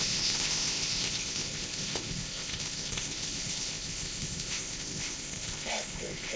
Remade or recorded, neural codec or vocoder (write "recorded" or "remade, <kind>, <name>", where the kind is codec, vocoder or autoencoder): remade, codec, ZipCodec